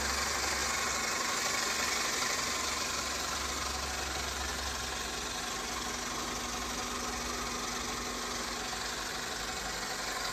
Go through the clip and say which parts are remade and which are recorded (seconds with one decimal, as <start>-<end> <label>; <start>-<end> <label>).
0.0-10.3 recorded